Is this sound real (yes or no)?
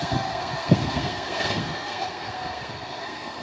no